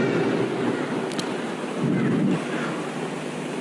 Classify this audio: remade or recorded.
recorded